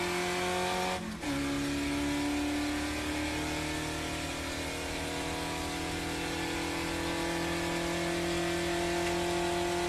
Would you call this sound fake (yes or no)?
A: no